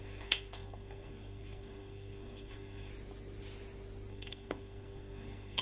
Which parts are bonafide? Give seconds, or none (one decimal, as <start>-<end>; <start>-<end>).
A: 2.9-4.1